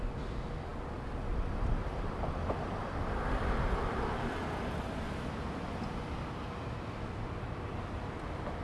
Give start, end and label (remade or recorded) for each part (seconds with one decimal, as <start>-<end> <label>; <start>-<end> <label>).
0.0-8.6 recorded